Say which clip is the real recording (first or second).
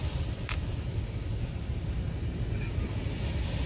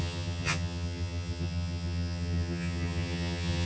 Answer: first